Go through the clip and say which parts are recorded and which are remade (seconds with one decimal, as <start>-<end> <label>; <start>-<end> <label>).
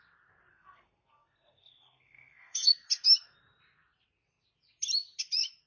0.0-0.5 recorded; 0.5-2.7 remade; 2.7-5.7 recorded